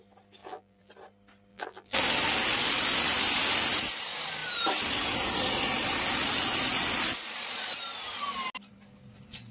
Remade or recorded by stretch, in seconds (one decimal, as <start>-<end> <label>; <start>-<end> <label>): 0.0-0.4 recorded; 0.4-0.9 remade; 0.9-1.5 recorded; 1.5-2.0 remade; 2.0-9.5 recorded